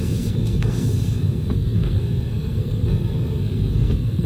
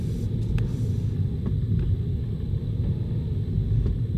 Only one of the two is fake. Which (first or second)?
first